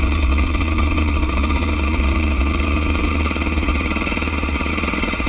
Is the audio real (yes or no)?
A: no